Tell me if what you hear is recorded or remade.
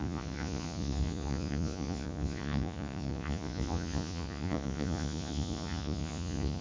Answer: remade